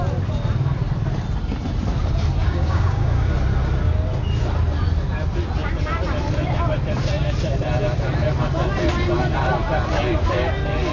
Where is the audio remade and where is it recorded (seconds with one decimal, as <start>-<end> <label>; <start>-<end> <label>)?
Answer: 0.0-2.4 recorded; 2.4-3.3 remade; 3.3-10.9 recorded